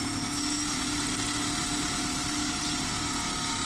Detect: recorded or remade recorded